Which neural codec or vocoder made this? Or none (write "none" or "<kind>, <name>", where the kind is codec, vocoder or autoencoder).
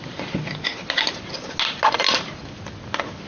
none